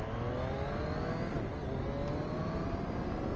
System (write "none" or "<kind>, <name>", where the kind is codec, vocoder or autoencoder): none